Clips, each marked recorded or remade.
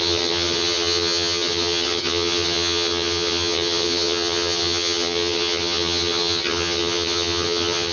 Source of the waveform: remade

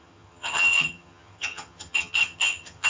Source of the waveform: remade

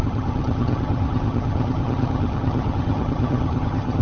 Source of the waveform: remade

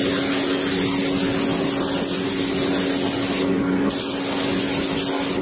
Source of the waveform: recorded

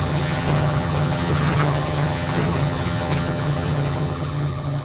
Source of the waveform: remade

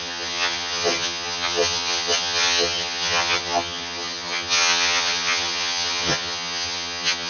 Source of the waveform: remade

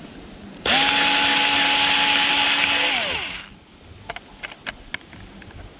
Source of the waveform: recorded